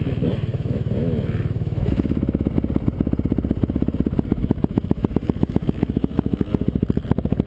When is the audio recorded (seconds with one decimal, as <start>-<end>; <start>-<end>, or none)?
0.0-0.5; 2.5-4.3; 6.5-7.5